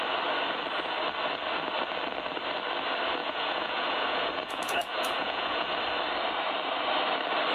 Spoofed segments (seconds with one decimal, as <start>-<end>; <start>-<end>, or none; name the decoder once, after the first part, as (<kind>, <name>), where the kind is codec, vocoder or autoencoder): 3.2-5.7 (vocoder, Vocos)